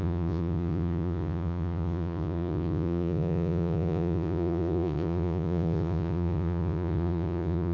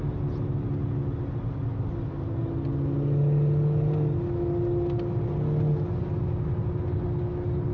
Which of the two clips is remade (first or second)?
first